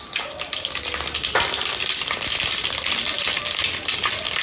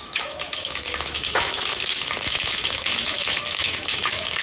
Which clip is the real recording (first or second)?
first